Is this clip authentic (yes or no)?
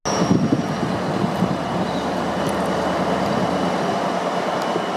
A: yes